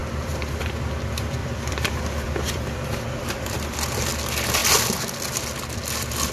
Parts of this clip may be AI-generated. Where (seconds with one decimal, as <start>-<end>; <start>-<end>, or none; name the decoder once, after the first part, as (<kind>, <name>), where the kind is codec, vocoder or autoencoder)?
0.0-0.6 (vocoder, BigVGAN v2); 1.4-4.1